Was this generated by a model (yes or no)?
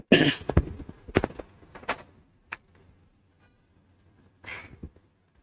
no